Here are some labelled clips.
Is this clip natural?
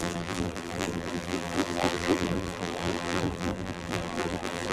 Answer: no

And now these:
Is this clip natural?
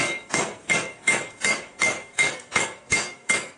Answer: no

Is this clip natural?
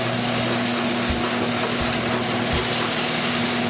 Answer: yes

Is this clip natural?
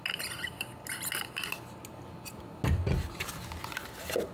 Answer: yes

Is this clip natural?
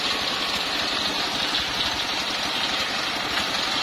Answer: no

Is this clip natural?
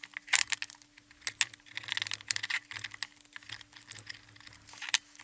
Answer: yes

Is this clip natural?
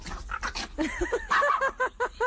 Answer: yes